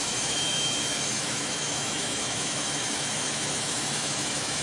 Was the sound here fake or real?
fake